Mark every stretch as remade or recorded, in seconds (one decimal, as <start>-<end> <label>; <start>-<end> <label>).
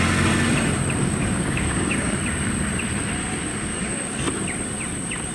0.0-1.0 recorded; 1.0-2.2 remade; 2.2-3.5 recorded; 3.5-4.2 remade; 4.2-5.3 recorded